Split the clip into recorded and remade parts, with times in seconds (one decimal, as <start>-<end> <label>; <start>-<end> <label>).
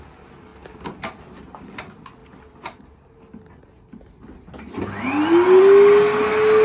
0.0-6.6 recorded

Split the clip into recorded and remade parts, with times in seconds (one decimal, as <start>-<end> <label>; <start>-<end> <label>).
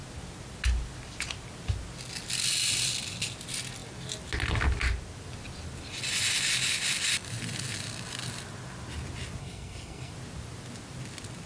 0.0-9.4 recorded; 9.4-10.1 remade; 10.1-11.5 recorded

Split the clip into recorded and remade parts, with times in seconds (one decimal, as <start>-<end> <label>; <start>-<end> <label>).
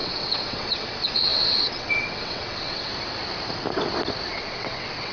0.0-2.9 remade; 2.9-4.3 recorded; 4.3-5.1 remade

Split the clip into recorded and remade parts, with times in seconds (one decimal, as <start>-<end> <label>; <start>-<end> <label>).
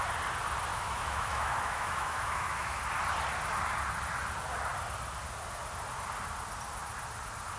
0.0-0.7 recorded; 0.7-2.8 remade; 2.8-7.6 recorded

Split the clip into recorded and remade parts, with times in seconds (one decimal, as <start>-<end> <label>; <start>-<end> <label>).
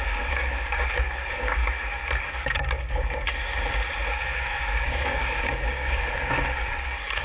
0.0-1.6 remade; 1.6-2.2 recorded; 2.2-3.4 remade; 3.4-4.1 recorded; 4.1-7.2 remade